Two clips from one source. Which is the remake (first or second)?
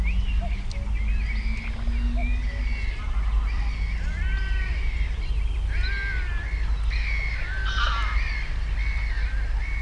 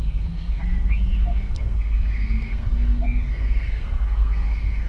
second